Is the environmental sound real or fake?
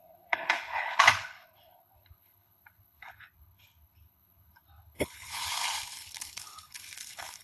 fake